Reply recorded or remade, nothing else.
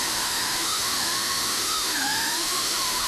remade